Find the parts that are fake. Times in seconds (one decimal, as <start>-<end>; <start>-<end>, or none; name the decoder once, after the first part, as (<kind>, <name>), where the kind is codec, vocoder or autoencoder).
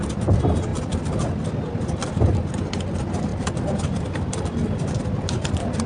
0.7-1.2 (vocoder, BigVGAN v2); 3.3-4.8